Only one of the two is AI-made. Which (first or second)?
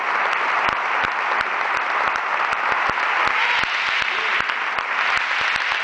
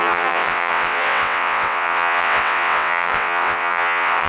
second